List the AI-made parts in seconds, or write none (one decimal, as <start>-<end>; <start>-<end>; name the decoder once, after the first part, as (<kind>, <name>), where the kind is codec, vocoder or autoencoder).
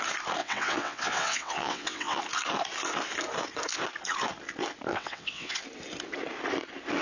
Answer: 0.4-2.2 (vocoder, WaveNeXt); 4.9-5.6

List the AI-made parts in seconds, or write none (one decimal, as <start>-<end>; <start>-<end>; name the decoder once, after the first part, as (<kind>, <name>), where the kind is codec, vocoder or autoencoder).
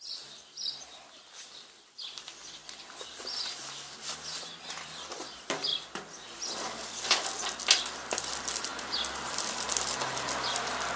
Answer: 0.0-2.6 (vocoder, BigVGAN v2); 4.6-5.7; 7.9-11.0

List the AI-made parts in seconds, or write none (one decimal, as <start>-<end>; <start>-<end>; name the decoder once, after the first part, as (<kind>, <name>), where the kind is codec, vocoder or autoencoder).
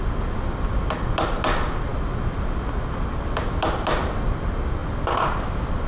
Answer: none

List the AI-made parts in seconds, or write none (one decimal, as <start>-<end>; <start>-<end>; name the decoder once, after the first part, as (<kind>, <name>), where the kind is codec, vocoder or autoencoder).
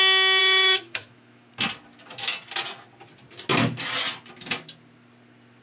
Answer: 0.4-1.5 (autoencoder, DAC-VAE)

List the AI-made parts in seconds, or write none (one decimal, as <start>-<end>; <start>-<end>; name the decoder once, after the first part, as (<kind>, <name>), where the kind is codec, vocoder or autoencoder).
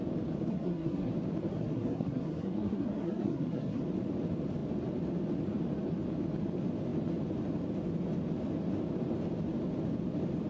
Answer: 0.5-1.1 (codec, SNAC); 1.5-3.8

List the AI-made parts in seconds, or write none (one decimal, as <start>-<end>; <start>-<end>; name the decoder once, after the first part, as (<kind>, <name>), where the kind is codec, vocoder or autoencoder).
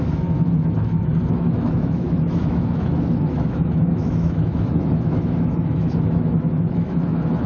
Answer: 0.0-7.5 (autoencoder, DAC-VAE)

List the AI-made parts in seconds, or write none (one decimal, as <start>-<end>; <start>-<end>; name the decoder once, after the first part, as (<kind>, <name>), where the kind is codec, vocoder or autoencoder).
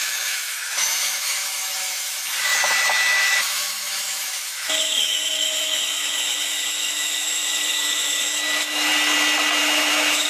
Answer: 0.0-8.9 (autoencoder, DAC-VAE); 9.6-10.3